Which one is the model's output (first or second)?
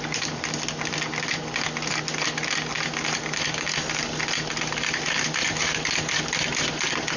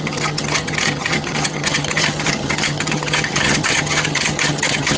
second